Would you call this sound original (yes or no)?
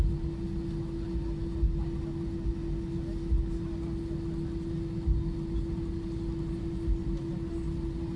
yes